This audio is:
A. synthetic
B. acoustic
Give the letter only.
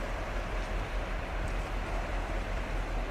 A